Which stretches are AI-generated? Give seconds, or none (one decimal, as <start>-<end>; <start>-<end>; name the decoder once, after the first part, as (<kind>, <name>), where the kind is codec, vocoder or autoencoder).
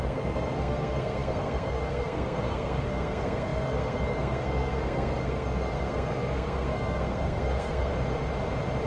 0.0-7.9 (codec, SNAC)